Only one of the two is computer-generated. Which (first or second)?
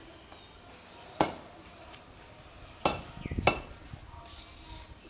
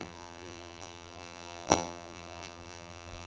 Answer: second